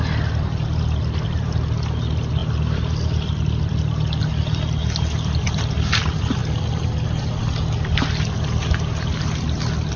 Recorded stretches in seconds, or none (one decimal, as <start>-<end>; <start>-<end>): 0.0-10.0